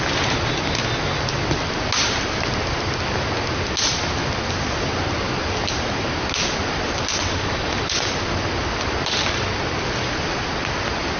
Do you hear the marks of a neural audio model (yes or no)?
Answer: no